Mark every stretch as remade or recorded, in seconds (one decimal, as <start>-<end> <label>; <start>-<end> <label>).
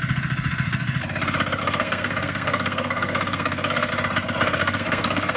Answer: 0.0-1.6 recorded; 1.6-3.9 remade; 3.9-4.6 recorded; 4.6-5.4 remade